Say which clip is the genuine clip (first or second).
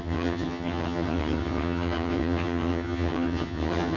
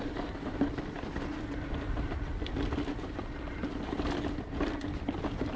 second